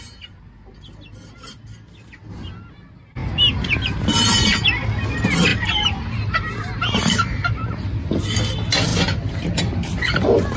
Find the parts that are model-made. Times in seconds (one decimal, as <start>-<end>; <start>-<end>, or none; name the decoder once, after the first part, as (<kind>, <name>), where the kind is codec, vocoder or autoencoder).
5.5-7.6 (vocoder, BigVGAN v2); 8.9-9.6